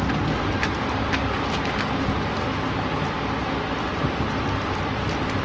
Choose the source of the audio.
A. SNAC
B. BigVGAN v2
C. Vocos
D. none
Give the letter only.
D